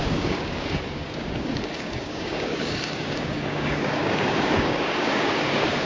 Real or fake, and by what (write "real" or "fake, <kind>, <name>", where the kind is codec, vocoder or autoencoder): fake, codec, DAC